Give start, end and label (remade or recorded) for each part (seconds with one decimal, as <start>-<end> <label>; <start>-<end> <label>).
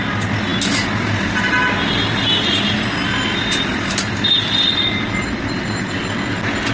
0.0-6.7 recorded